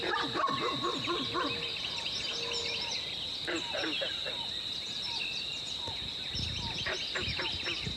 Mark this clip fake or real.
real